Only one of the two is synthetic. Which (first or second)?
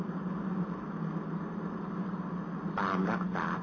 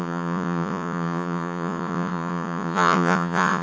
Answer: second